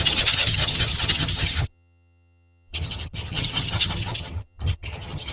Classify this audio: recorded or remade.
remade